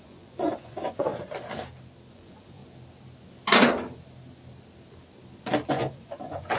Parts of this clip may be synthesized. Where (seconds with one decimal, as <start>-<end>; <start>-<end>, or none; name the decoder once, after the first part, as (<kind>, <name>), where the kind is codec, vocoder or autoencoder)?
0.0-1.1 (vocoder, Vocos); 2.1-2.6; 5.7-6.6